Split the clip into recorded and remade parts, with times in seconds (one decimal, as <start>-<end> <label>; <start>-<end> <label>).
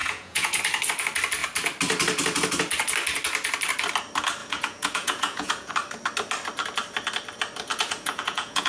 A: 0.0-0.6 remade; 0.6-4.4 recorded; 4.4-5.7 remade; 5.7-7.7 recorded; 7.7-8.7 remade